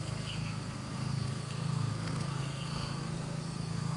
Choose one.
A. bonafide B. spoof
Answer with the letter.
B